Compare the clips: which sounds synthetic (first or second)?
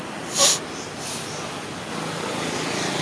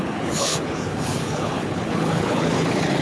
second